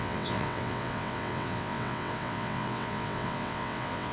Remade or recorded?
remade